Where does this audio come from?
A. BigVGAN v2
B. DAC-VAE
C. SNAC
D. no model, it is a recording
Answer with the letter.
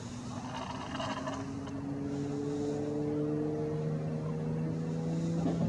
D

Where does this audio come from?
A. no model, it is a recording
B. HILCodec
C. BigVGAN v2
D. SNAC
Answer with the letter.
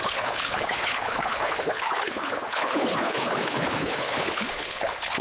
B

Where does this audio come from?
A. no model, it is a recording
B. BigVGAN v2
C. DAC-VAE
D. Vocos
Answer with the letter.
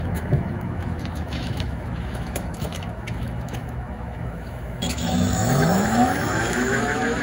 C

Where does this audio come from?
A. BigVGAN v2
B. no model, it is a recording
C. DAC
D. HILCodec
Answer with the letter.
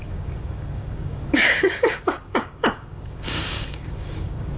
C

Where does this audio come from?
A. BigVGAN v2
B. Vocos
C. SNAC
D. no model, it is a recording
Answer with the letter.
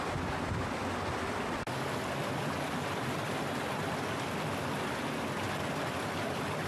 D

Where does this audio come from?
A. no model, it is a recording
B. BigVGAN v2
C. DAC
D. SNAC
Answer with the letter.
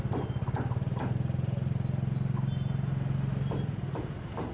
A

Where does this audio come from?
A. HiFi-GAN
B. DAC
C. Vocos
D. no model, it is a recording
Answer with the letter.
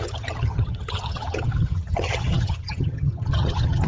A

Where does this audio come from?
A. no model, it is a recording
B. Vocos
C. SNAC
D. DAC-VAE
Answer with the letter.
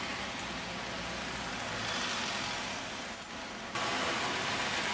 A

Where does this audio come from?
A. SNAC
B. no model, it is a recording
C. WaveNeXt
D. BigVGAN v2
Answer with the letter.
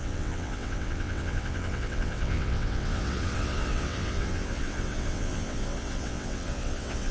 C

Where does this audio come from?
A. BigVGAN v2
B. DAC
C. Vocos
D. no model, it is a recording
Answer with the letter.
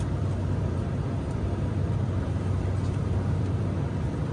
A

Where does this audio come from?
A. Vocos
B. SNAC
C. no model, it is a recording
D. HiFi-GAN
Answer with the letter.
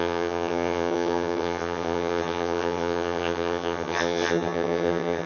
D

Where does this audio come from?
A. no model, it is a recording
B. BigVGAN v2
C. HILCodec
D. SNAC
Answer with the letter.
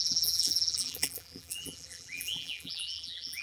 B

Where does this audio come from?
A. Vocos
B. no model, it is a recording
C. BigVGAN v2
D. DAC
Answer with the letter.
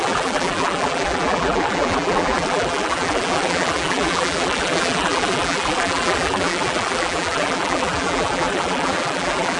C